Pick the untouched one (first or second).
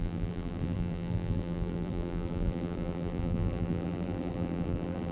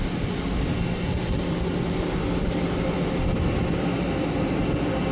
second